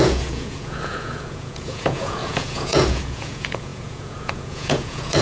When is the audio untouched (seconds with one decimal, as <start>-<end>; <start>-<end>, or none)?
none